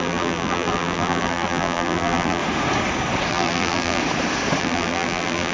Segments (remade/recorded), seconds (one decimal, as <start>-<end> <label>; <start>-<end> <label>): 0.0-2.4 remade; 2.4-3.3 recorded; 3.3-4.0 remade; 4.0-4.6 recorded; 4.6-5.5 remade